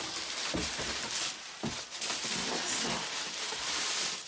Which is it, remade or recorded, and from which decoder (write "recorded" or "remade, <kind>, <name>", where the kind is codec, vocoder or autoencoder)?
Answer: recorded